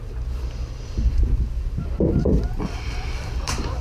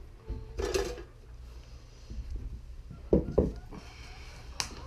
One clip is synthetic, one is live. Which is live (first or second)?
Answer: second